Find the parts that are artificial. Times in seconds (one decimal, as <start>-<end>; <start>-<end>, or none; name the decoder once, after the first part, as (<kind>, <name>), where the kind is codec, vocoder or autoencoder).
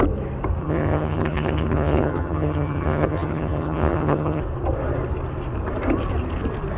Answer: 0.6-4.4 (vocoder, HiFi-GAN)